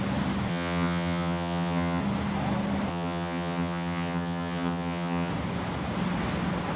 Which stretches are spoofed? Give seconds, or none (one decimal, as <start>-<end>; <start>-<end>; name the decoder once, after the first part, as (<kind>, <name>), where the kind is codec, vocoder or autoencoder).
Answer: 0.5-2.0 (vocoder, HiFi-GAN); 2.9-5.3

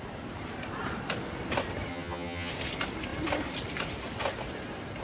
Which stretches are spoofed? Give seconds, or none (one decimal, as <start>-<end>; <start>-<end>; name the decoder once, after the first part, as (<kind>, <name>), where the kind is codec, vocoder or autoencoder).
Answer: 1.9-2.5 (vocoder, HiFi-GAN)

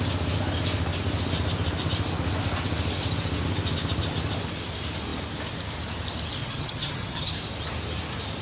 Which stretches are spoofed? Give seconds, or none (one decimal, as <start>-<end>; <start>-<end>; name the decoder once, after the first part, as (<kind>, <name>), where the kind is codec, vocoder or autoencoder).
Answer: 6.4-7.3 (vocoder, HiFi-GAN)

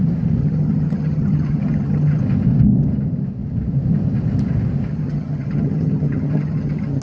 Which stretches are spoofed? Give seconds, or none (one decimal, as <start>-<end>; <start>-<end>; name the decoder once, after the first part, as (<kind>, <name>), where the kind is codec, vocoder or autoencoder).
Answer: 0.4-2.2 (vocoder, HiFi-GAN); 4.9-7.0